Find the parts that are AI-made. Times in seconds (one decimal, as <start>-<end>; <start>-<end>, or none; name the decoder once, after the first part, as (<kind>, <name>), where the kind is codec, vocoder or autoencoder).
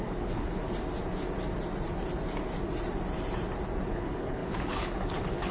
0.0-0.6 (codec, HILCodec); 3.9-5.5